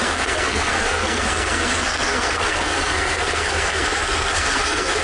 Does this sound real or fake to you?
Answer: fake